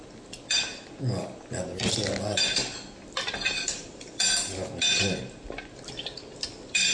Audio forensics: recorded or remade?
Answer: recorded